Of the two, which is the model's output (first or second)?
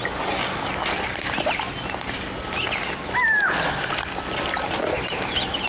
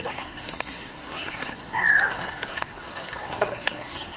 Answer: second